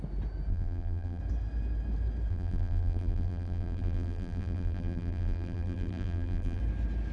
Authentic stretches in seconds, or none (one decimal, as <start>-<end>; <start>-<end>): 0.0-0.5; 1.2-2.3; 6.6-7.1

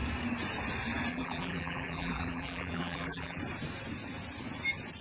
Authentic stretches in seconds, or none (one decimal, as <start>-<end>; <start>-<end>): 0.0-1.1; 3.4-5.0

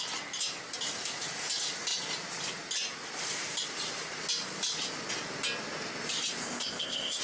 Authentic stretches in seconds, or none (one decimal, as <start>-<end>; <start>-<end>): 0.0-6.4

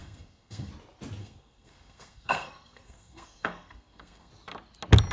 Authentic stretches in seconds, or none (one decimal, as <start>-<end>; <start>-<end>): 0.7-1.2; 4.3-5.1

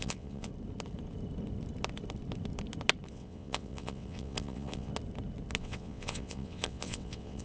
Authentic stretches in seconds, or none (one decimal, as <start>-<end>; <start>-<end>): 0.5-3.1; 4.9-5.6

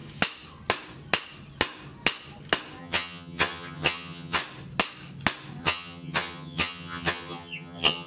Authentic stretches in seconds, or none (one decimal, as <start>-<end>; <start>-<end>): 0.0-2.8; 4.4-5.6

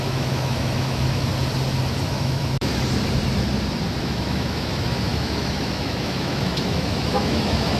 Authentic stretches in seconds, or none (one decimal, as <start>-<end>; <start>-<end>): 1.3-2.1; 2.7-4.0

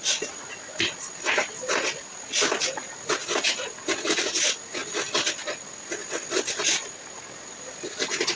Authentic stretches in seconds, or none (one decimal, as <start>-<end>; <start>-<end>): 0.0-8.3